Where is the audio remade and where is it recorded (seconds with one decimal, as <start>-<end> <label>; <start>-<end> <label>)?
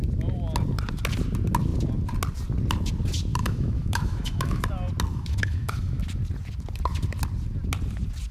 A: 0.0-3.4 recorded; 3.4-4.6 remade; 4.6-5.1 recorded; 5.1-6.0 remade; 6.0-8.3 recorded